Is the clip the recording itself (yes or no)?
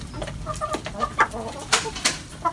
no